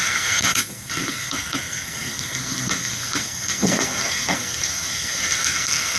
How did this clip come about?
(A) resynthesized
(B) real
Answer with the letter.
A